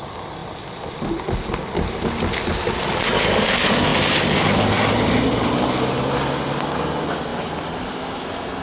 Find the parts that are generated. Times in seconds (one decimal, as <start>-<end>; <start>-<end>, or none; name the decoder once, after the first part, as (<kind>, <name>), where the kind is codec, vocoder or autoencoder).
none